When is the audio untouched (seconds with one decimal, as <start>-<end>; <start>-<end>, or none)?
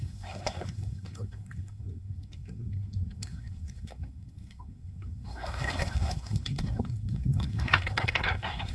none